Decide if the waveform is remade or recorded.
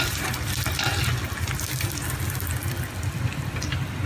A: recorded